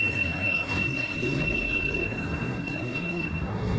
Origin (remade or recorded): remade